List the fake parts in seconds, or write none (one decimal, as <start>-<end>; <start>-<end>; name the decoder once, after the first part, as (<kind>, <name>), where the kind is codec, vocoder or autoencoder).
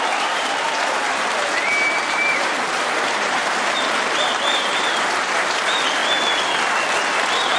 0.0-6.0 (vocoder, BigVGAN v2); 7.0-7.6